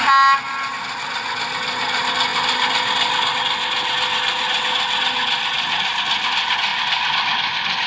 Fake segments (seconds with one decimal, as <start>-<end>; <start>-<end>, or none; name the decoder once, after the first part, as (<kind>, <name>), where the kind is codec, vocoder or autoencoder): 6.7-7.9 (vocoder, BigVGAN v2)